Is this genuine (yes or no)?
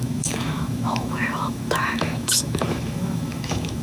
no